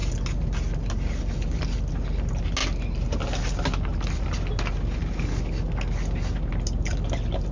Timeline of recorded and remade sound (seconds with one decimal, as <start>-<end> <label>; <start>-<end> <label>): 0.0-7.5 recorded